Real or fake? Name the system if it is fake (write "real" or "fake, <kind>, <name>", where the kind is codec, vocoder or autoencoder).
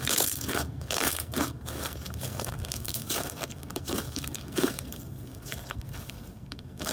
fake, codec, SNAC